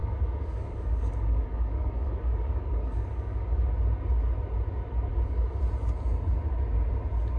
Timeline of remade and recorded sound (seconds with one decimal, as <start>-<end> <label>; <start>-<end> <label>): 0.0-3.7 remade; 3.7-5.1 recorded; 5.1-5.6 remade; 5.6-7.4 recorded